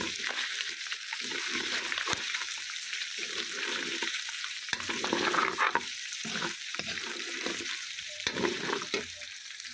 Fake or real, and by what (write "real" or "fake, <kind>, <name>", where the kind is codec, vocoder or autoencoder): fake, vocoder, BigVGAN v2